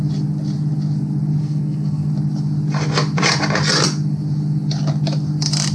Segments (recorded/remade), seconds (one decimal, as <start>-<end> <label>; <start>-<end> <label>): 0.0-1.4 recorded; 1.4-2.1 remade; 2.1-5.7 recorded